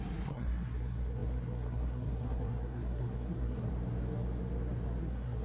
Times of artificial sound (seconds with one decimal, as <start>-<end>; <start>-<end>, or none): 0.0-3.7; 5.0-5.4